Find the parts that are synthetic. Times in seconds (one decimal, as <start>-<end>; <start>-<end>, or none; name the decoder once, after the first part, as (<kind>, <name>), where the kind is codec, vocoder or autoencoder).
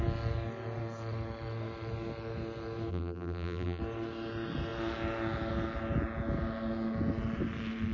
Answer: 2.9-3.8 (vocoder, BigVGAN v2)